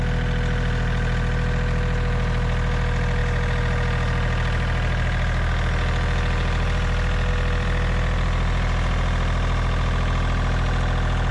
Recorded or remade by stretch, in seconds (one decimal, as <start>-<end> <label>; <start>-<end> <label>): 0.0-11.3 recorded